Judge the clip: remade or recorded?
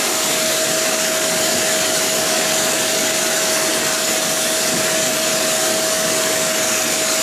remade